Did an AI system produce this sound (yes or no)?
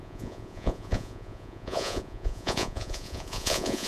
yes